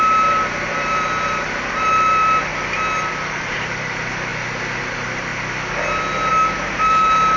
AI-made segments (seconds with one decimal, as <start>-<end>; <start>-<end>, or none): 0.0-2.5; 3.0-4.3; 4.8-5.3; 6.3-7.4